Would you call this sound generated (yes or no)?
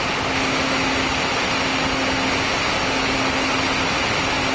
no